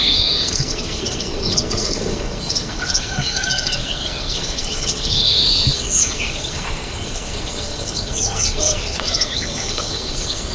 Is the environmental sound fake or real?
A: fake